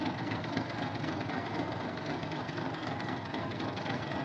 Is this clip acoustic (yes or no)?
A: no